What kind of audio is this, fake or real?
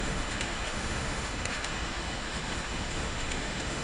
fake